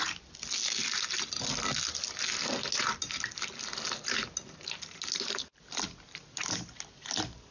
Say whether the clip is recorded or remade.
recorded